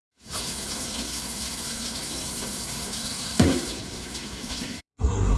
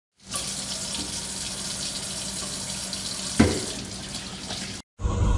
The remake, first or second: first